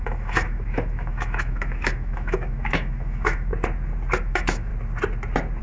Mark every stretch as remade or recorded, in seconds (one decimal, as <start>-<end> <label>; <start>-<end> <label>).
0.0-3.5 remade; 3.5-4.2 recorded; 4.2-4.7 remade; 4.7-5.6 recorded